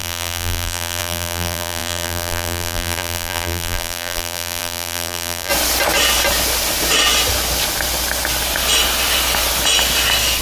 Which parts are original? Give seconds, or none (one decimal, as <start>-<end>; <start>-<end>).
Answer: 5.5-10.4